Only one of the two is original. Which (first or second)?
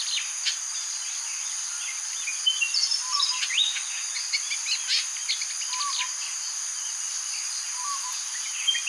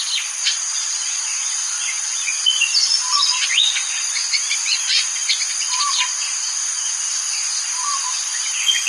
first